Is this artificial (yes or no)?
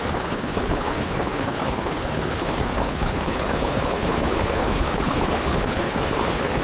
yes